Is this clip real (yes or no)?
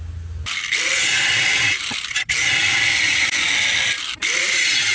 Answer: yes